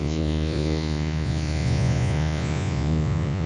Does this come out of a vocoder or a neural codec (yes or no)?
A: yes